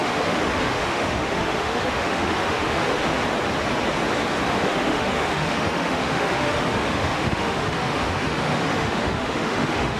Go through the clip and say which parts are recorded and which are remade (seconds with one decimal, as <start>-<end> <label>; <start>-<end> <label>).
0.0-3.2 remade; 3.2-4.5 recorded; 4.5-10.0 remade